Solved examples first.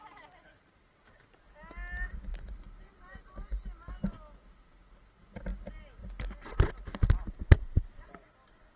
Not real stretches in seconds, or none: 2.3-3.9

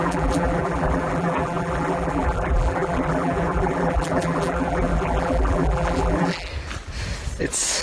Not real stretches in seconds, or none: 0.0-6.5

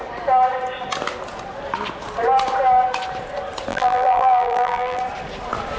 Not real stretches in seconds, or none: 3.7-5.0

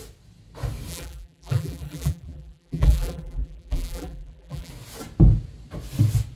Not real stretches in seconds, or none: 0.9-4.7

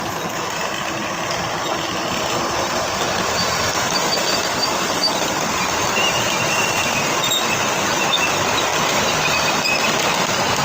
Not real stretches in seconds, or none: 8.7-9.9